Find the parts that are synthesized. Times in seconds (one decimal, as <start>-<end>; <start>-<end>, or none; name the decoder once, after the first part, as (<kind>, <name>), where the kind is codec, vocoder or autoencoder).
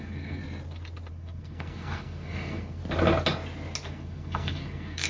0.0-0.4 (codec, SNAC); 1.1-2.8; 3.9-5.1